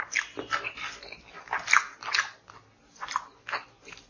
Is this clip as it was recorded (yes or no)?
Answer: yes